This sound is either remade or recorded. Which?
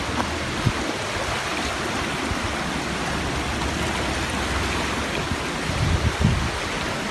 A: recorded